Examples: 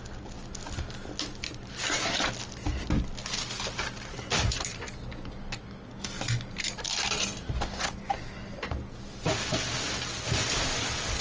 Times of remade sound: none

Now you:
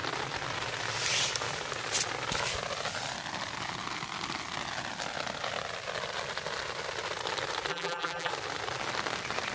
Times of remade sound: 7.7-8.3 (vocoder, BigVGAN v2)

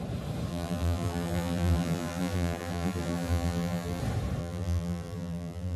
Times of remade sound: 0.5-4.0 (vocoder, BigVGAN v2); 4.4-5.8